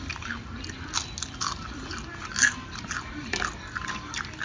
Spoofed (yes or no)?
no